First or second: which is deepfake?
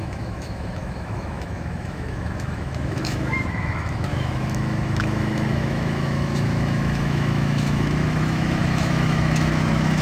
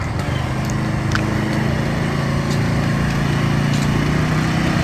first